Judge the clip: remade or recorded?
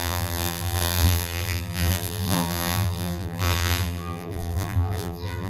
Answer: remade